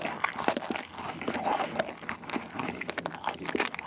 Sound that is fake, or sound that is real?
real